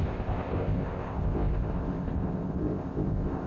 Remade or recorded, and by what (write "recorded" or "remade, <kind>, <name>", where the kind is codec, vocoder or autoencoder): remade, codec, ZipCodec